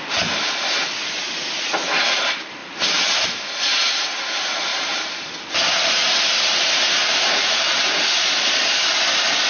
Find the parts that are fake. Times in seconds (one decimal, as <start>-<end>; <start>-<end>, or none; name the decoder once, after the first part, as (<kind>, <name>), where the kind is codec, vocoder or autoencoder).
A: 2.6-3.5 (vocoder, BigVGAN v2); 4.7-5.3; 7.0-8.0